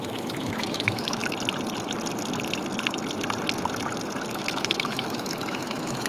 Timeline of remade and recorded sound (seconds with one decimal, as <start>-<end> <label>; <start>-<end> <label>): 0.0-1.2 remade; 1.2-4.3 recorded; 4.3-6.1 remade